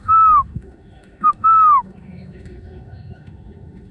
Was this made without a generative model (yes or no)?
no